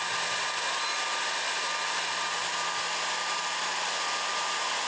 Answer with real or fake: real